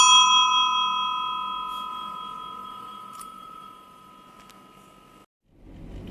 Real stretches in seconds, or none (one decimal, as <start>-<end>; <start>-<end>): 0.0-2.6; 4.1-6.1

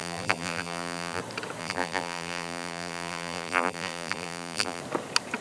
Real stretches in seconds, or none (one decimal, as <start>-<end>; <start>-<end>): 1.2-1.6; 4.8-5.4

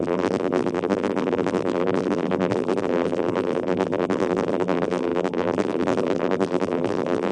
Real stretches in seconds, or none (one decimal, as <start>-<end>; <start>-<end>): none

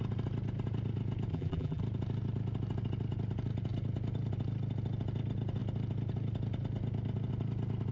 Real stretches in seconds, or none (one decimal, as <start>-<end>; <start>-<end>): 0.0-1.3; 1.8-7.9

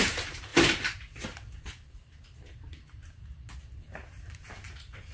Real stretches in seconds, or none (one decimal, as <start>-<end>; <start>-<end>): none